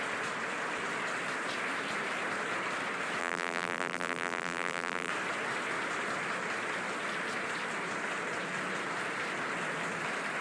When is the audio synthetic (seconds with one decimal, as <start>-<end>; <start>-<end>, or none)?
3.2-5.1